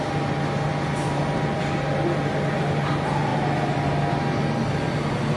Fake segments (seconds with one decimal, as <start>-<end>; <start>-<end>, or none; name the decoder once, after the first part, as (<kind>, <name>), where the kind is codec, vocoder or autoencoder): none